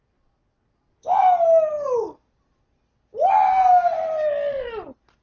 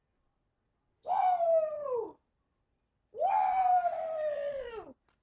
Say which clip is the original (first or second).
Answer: first